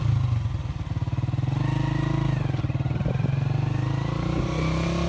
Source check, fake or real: real